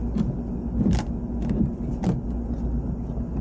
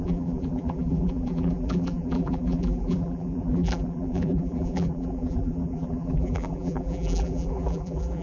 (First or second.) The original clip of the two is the first